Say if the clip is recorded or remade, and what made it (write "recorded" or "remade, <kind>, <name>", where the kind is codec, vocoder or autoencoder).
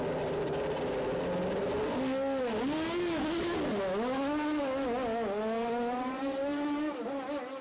recorded